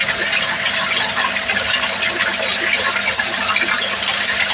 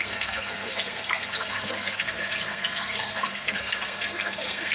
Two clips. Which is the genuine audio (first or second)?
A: first